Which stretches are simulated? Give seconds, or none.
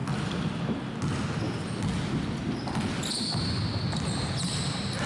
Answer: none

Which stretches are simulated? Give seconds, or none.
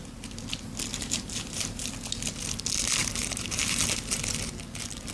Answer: 0.9-1.9 (vocoder, BigVGAN v2); 3.0-4.5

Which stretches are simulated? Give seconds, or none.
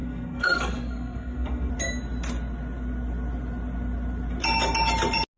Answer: 0.0-1.7 (codec, SNAC)